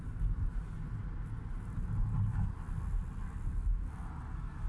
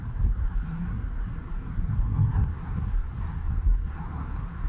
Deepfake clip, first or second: second